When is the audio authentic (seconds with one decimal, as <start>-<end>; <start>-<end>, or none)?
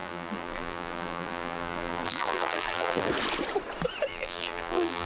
3.1-4.1